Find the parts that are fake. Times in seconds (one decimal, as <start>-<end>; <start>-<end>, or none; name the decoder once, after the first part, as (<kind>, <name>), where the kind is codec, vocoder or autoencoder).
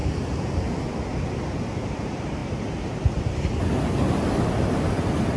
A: none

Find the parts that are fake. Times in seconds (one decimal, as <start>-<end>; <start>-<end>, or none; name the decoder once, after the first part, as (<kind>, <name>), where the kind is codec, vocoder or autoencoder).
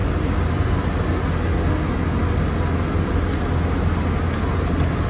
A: none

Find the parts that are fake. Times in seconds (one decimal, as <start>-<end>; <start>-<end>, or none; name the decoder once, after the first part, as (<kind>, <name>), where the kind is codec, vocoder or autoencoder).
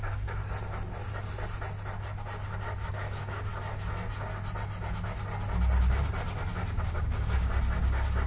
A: 0.0-0.4 (codec, DAC); 2.9-3.5; 6.7-7.5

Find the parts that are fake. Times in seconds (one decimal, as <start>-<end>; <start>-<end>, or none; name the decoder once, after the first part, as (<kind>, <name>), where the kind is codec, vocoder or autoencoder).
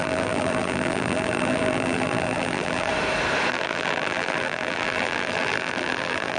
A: 0.0-2.9 (vocoder, BigVGAN v2); 3.5-6.4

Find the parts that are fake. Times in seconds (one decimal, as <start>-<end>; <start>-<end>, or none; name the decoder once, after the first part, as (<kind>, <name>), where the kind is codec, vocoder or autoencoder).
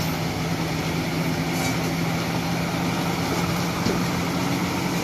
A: none